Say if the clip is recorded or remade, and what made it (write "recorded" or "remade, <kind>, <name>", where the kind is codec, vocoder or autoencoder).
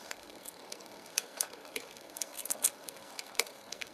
remade, codec, SNAC